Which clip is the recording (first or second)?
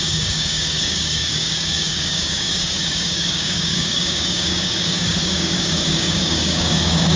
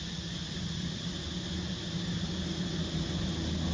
second